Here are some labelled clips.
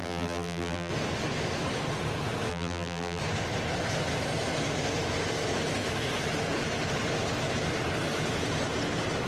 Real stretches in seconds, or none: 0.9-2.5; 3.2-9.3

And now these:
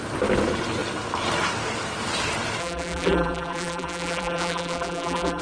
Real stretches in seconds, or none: 0.0-2.6

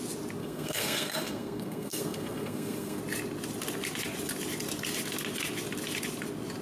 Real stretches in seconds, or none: 0.0-0.4; 3.0-6.6

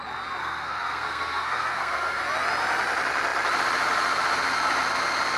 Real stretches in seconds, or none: 0.0-0.4; 2.2-5.4